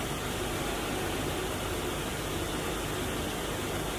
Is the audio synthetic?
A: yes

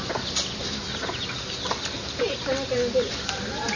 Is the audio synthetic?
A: no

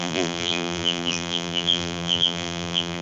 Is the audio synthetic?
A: yes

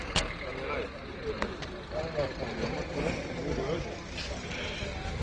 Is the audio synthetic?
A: no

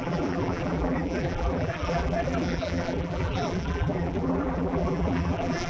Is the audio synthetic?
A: yes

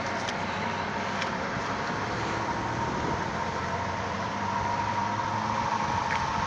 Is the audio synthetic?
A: yes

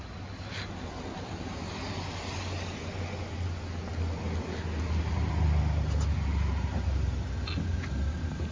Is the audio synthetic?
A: no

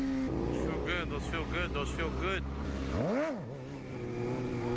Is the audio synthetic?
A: no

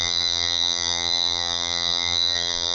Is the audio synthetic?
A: yes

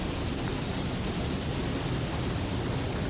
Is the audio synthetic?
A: no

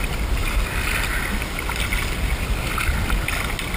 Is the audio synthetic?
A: no